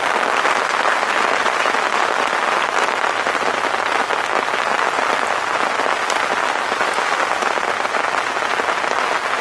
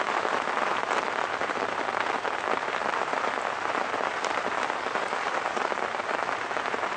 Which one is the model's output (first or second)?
second